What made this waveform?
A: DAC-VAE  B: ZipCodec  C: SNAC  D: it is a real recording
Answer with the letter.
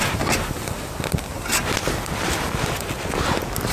D